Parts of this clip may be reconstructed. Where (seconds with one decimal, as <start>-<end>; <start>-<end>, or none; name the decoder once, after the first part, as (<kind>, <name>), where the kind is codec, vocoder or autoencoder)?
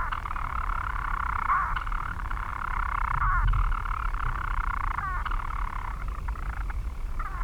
0.0-2.5 (vocoder, BigVGAN v2); 6.0-7.4